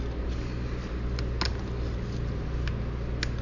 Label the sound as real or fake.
real